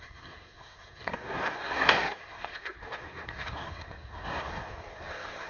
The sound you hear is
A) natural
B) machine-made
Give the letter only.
B